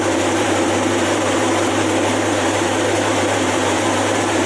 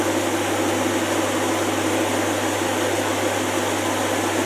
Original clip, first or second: second